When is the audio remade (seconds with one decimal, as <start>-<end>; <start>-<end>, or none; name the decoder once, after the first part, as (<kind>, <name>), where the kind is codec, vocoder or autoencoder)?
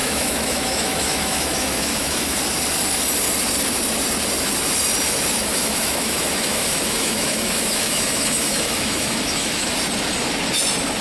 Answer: 0.0-2.4 (autoencoder, DAC-VAE); 5.5-9.7